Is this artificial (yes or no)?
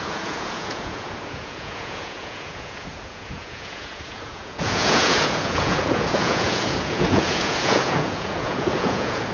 yes